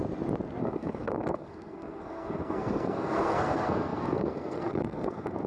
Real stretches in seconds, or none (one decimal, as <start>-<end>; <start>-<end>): 0.0-0.6